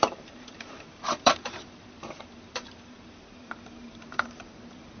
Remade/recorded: remade